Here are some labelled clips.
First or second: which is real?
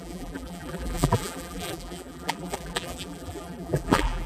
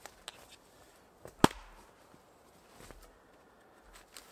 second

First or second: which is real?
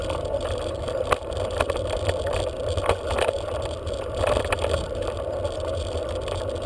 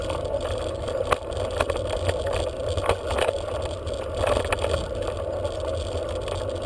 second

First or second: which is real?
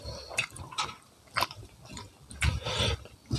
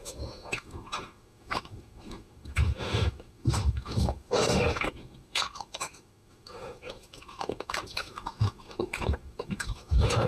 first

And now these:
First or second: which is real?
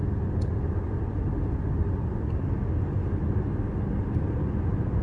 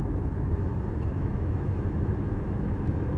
first